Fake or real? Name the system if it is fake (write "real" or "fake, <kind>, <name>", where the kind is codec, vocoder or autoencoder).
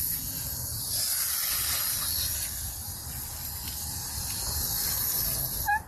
real